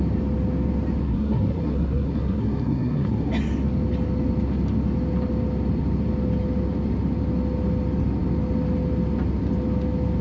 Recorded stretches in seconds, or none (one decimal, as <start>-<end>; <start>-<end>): 0.0-1.0; 3.3-10.2